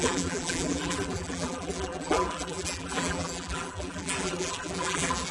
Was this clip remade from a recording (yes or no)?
yes